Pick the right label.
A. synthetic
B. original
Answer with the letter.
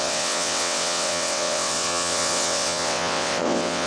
A